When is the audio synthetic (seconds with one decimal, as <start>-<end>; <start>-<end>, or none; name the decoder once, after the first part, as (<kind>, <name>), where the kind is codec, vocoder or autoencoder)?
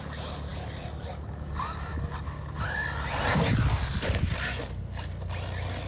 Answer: none